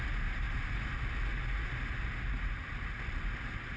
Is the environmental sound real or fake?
real